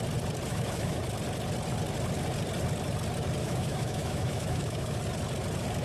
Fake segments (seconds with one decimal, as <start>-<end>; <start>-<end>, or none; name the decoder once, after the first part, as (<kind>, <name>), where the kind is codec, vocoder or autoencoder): 0.5-1.0 (autoencoder, DAC-VAE); 3.4-5.0